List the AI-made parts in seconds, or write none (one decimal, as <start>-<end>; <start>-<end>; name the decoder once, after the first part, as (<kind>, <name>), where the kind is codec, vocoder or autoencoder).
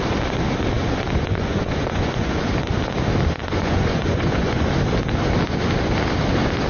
0.8-2.4 (vocoder, Vocos); 3.4-4.7